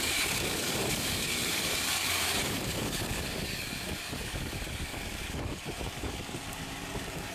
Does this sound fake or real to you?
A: fake